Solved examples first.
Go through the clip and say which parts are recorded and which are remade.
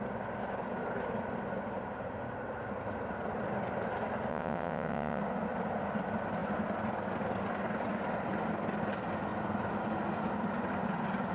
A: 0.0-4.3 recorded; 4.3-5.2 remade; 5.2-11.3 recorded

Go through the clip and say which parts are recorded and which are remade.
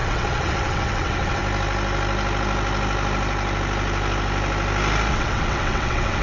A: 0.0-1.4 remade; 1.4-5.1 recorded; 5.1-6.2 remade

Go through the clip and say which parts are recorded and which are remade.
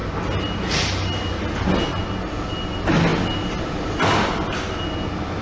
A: 0.0-5.4 recorded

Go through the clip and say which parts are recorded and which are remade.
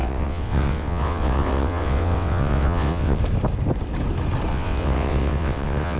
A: 0.0-3.2 remade; 3.2-4.5 recorded; 4.5-6.0 remade